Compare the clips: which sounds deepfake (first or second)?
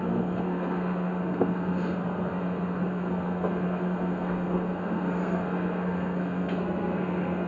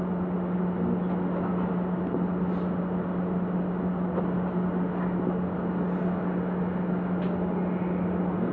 first